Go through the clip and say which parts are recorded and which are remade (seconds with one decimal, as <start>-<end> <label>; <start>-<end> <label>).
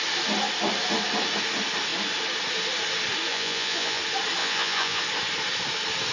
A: 0.0-3.3 recorded; 3.3-4.0 remade; 4.0-4.4 recorded; 4.4-5.0 remade; 5.0-6.1 recorded